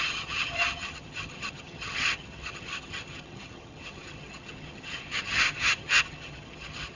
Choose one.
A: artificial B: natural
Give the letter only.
A